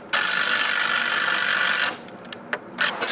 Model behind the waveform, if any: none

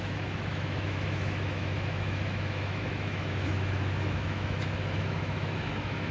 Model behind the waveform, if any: autoencoder, DAC-VAE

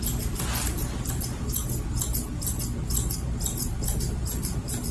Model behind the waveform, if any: none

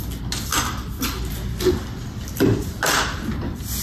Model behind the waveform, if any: none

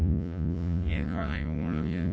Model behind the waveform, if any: vocoder, Vocos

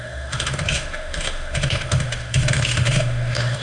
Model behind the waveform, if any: autoencoder, DAC-VAE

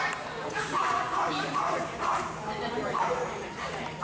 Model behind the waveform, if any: vocoder, BigVGAN v2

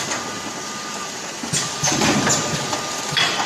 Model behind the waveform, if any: none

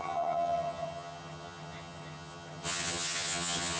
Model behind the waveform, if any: vocoder, HiFi-GAN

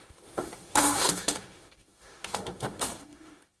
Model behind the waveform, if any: autoencoder, DAC-VAE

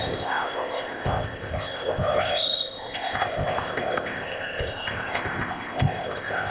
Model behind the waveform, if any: codec, ZipCodec